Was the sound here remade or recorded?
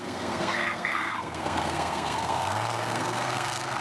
remade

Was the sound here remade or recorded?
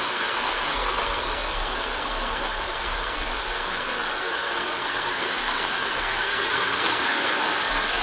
remade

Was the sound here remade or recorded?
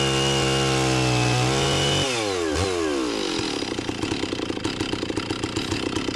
recorded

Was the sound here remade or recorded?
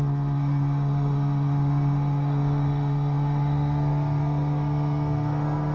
remade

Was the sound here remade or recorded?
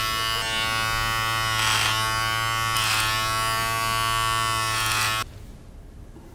recorded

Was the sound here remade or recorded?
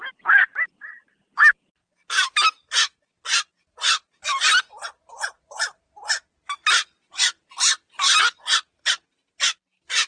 recorded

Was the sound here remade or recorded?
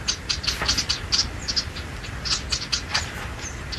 recorded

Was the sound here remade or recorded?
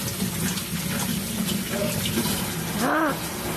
recorded